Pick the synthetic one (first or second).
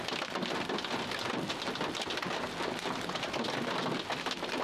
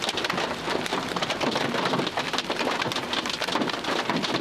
second